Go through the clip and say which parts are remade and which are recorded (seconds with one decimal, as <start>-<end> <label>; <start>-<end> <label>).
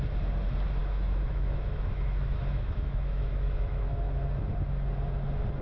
0.0-0.8 recorded; 0.8-4.2 remade; 4.2-5.6 recorded